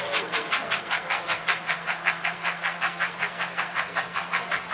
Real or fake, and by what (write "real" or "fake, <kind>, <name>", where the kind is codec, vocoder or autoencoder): fake, codec, SNAC